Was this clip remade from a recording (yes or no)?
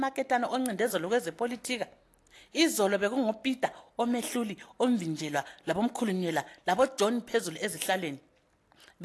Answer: no